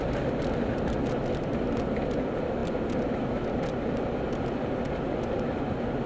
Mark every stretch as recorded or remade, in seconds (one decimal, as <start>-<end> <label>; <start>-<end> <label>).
0.0-6.1 recorded